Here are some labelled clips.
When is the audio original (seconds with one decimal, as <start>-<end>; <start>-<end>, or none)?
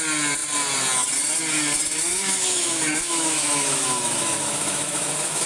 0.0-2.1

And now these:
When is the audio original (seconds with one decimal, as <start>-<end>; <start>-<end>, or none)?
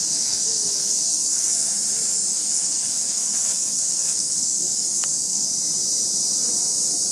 1.7-2.3; 5.5-7.1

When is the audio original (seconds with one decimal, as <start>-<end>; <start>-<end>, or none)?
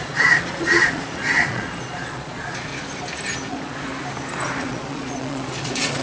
2.7-3.5; 3.9-4.6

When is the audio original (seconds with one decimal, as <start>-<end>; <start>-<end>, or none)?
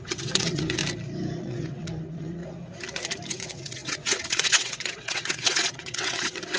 0.8-1.4; 2.4-3.3